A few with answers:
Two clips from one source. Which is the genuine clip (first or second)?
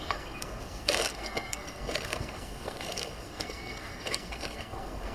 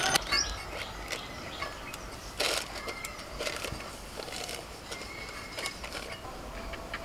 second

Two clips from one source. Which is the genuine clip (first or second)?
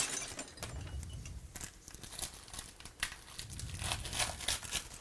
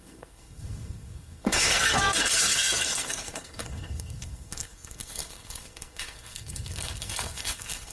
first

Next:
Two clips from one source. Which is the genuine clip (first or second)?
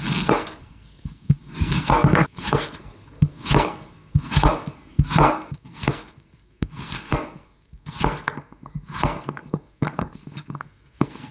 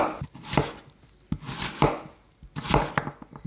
second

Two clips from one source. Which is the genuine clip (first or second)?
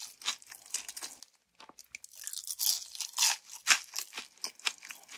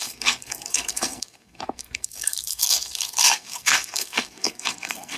first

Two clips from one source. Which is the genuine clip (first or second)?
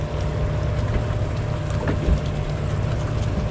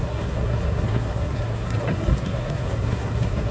first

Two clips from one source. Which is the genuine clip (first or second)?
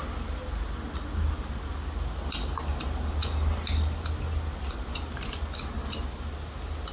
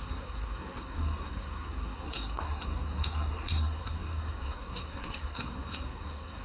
first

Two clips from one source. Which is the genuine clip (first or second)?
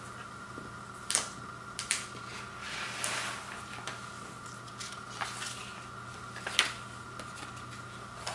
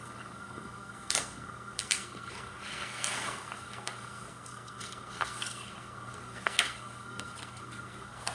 first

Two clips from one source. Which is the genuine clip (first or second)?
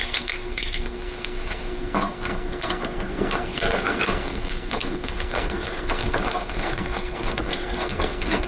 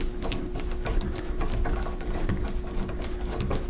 second